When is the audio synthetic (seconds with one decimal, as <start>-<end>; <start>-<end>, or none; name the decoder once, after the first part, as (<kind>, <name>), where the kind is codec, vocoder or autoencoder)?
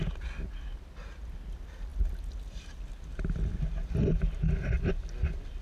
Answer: none